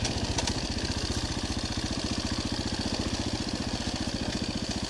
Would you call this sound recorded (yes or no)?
no